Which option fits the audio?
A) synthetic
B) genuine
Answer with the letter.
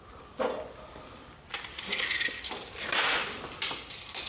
B